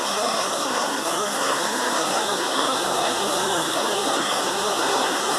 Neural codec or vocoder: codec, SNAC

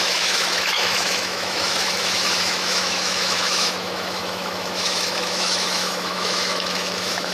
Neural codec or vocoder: autoencoder, DAC-VAE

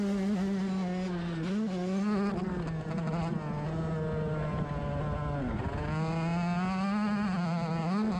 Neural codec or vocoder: none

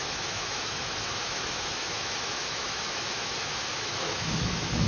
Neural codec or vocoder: autoencoder, DAC-VAE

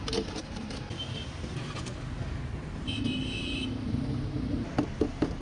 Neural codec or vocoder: none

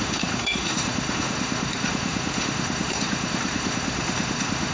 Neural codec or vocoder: autoencoder, DAC-VAE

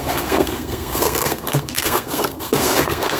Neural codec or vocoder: codec, SNAC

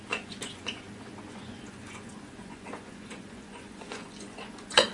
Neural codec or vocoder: vocoder, Vocos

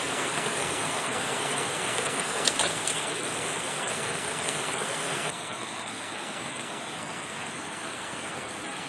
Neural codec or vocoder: codec, SNAC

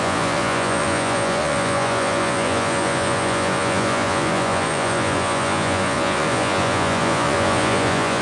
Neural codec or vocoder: vocoder, Vocos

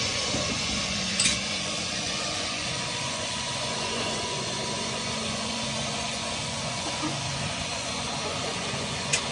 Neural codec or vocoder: vocoder, Vocos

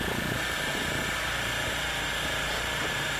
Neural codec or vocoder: vocoder, BigVGAN v2